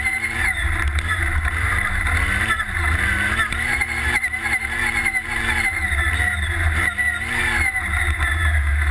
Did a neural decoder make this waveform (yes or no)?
yes